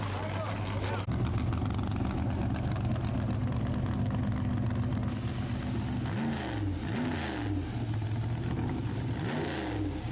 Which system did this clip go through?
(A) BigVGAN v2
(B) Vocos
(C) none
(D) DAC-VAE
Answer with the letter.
C